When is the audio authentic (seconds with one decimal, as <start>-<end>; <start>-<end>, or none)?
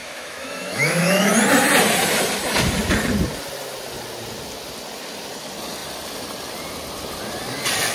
1.3-7.9